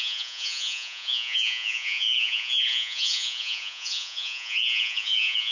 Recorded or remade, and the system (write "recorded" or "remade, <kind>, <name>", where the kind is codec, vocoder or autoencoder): remade, vocoder, Vocos